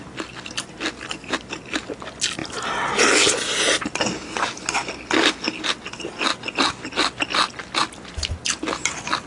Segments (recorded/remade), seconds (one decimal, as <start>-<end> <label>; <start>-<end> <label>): 0.0-9.3 recorded